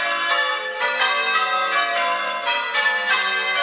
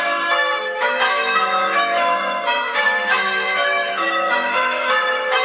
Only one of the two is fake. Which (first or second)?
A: second